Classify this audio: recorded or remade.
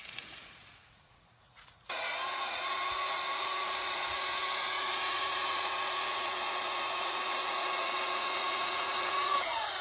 remade